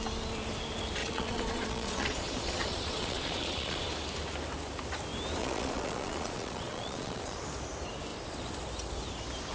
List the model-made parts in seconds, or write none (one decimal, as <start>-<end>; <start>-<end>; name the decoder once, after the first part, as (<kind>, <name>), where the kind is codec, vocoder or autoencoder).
1.0-3.9 (vocoder, Vocos); 5.4-7.4